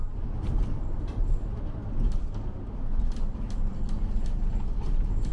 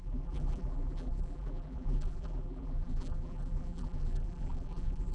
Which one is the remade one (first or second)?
second